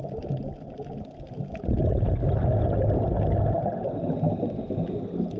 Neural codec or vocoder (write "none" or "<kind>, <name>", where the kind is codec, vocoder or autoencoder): none